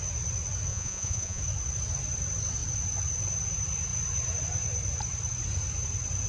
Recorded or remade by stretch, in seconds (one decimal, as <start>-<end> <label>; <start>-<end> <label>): 0.0-0.7 recorded; 0.7-1.4 remade; 1.4-6.3 recorded

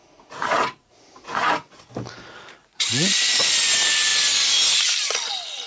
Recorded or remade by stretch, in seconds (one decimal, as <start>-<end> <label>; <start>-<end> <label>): 0.0-1.9 remade; 1.9-2.6 recorded; 2.6-3.5 remade; 3.5-5.7 recorded

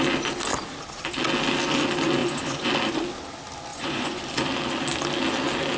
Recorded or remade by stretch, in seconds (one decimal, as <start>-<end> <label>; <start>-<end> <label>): 0.0-2.2 recorded; 2.2-2.7 remade; 2.7-3.7 recorded; 3.7-4.2 remade; 4.2-5.8 recorded

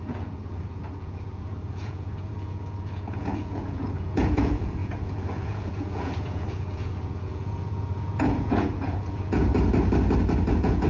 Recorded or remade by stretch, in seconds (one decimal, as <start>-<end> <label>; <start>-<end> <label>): 0.0-9.5 remade; 9.5-10.5 recorded; 10.5-10.9 remade